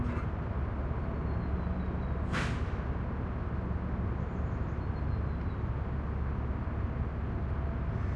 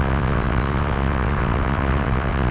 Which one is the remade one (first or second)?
second